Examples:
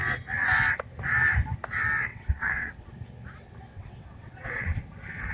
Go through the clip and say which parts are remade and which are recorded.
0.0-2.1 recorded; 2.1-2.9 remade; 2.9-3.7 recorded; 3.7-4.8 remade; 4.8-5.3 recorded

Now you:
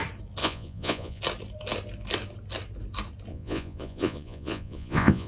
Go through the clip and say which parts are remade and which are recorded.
0.0-0.4 recorded; 0.4-1.2 remade; 1.2-3.3 recorded; 3.3-5.3 remade

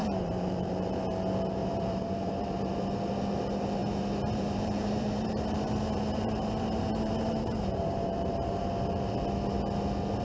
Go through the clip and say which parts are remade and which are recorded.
0.0-1.0 remade; 1.0-1.6 recorded; 1.6-2.9 remade; 2.9-3.8 recorded; 3.8-8.7 remade; 8.7-10.2 recorded

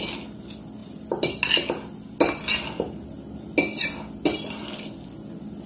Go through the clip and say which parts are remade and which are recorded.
0.0-0.8 recorded; 0.8-1.4 remade; 1.4-5.7 recorded

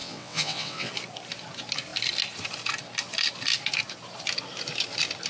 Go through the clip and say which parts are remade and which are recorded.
0.0-0.9 remade; 0.9-5.3 recorded

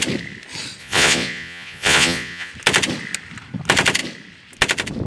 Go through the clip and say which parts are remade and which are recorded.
0.0-0.8 recorded; 0.8-2.5 remade; 2.5-5.1 recorded